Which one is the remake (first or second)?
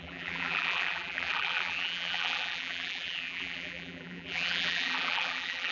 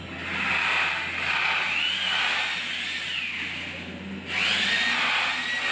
first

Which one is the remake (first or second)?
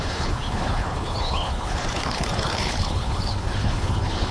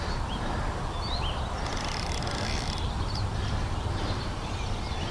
first